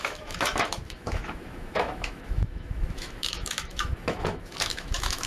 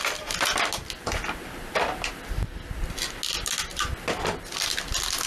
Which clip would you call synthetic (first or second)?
first